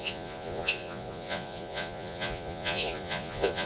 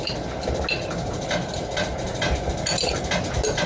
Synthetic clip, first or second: first